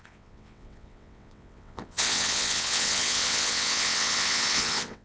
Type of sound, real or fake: fake